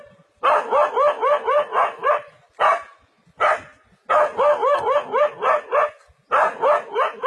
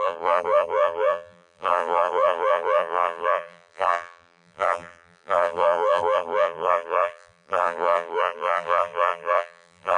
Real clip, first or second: first